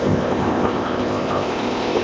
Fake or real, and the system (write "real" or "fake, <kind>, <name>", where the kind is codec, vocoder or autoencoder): fake, codec, ZipCodec